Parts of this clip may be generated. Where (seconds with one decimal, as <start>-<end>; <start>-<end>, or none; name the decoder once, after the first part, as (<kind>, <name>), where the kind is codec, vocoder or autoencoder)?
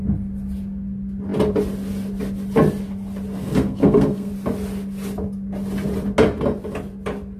3.4-4.3 (codec, SNAC)